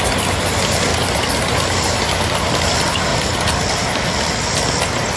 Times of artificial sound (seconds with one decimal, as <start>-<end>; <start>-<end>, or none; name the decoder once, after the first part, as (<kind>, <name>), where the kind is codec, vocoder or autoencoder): none